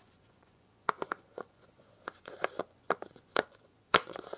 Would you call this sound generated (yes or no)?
yes